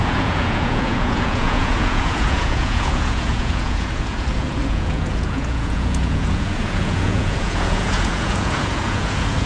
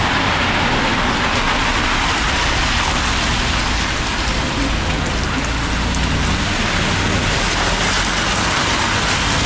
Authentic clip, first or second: second